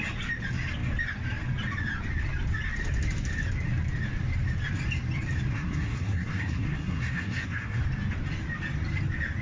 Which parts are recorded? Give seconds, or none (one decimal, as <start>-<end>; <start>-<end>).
0.0-5.5; 7.8-9.4